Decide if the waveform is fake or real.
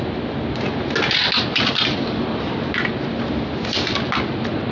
real